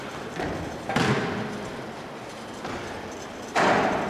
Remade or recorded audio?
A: remade